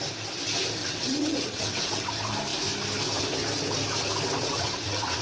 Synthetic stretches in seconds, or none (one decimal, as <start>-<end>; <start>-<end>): 0.8-2.1; 4.4-5.2